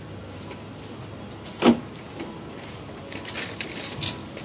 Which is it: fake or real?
real